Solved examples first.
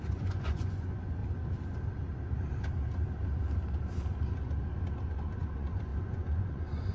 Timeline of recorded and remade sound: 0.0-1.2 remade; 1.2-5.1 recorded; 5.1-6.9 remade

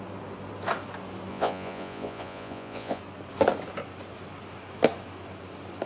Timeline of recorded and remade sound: 0.0-1.3 recorded; 1.3-3.0 remade; 3.0-5.9 recorded

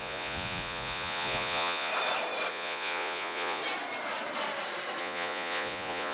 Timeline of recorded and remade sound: 0.0-1.9 remade; 1.9-2.5 recorded; 2.5-3.6 remade; 3.6-5.0 recorded; 5.0-6.1 remade